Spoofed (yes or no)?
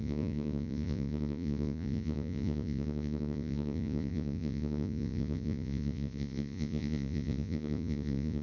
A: yes